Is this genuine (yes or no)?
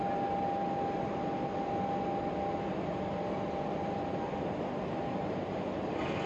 yes